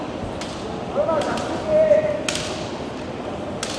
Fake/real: real